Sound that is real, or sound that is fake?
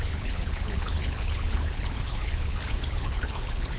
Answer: fake